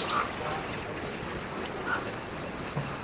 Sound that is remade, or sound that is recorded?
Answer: recorded